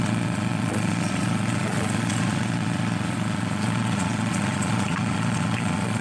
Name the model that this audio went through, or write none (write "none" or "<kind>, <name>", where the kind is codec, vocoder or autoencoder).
vocoder, Vocos